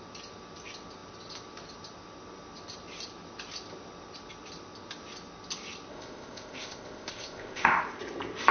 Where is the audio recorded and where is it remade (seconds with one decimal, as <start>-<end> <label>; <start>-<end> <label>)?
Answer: 0.0-5.9 recorded; 5.9-7.8 remade; 7.8-8.5 recorded